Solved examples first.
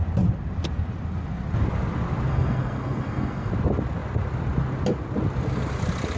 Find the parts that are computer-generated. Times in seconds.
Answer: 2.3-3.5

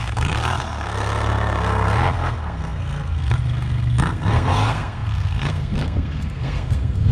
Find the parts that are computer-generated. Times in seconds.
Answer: 0.0-7.1